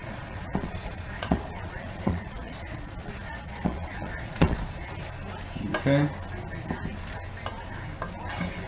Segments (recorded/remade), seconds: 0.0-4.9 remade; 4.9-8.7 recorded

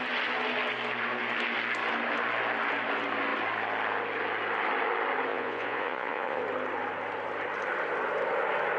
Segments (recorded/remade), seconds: 0.0-5.3 recorded; 5.3-6.4 remade; 6.4-8.8 recorded

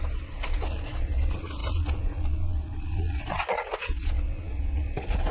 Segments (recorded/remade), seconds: 0.0-5.3 remade

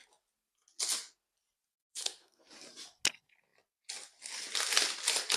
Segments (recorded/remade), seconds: 0.0-1.7 recorded; 1.7-2.4 remade; 2.4-5.4 recorded

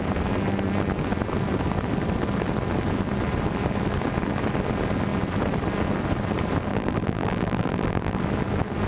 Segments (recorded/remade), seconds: 0.0-6.7 recorded; 6.7-8.2 remade; 8.2-8.9 recorded

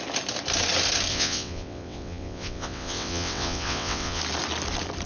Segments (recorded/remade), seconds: 0.0-1.1 recorded; 1.1-4.2 remade; 4.2-5.1 recorded

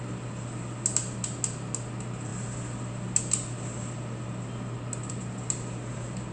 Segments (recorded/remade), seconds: 0.0-6.3 recorded

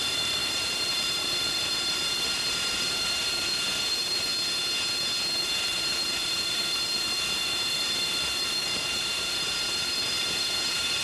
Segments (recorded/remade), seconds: 0.0-4.3 remade; 4.3-5.4 recorded; 5.4-11.0 remade